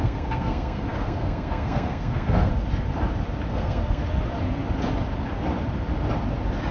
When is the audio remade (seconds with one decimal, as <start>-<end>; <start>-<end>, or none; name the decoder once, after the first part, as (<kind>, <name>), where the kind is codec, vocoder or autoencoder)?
0.0-2.5 (codec, SNAC); 3.5-4.0